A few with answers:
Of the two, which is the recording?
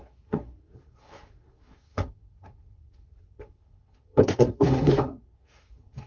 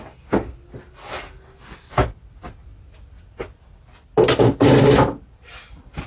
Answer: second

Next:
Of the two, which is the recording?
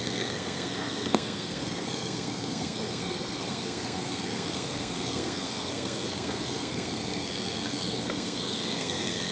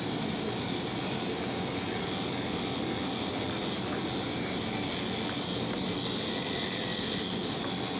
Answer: second